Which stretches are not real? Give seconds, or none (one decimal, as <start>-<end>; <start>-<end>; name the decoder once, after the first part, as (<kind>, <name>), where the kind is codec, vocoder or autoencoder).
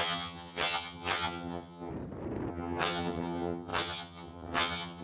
0.0-1.9 (vocoder, HiFi-GAN); 2.5-5.0